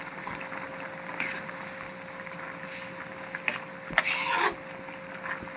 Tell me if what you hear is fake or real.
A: real